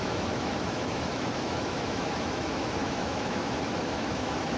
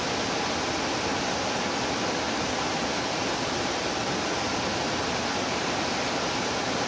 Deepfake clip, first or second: first